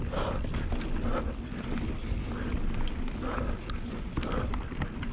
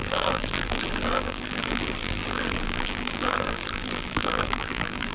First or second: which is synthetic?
second